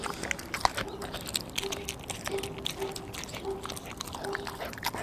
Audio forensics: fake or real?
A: real